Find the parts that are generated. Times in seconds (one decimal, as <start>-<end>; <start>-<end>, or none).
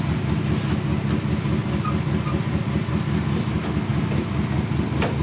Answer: 1.6-2.9; 3.9-4.5